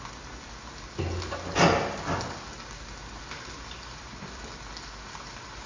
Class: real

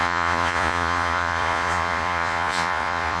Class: fake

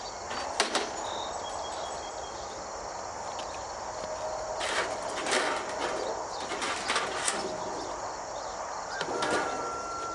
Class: real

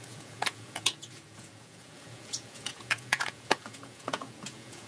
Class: fake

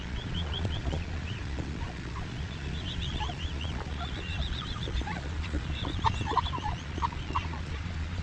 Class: fake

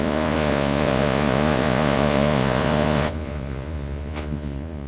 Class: fake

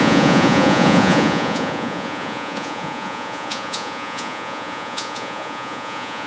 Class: fake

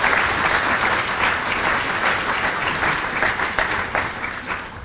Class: real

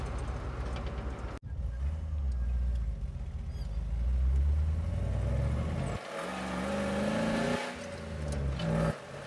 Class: real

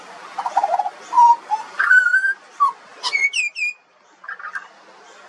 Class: real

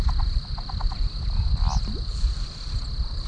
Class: real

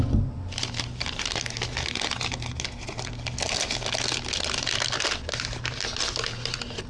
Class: real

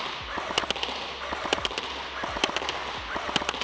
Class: real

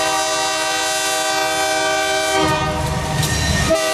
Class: real